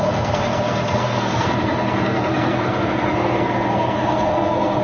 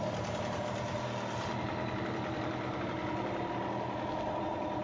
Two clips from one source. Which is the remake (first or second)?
first